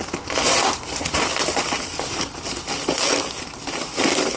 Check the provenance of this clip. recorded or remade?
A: remade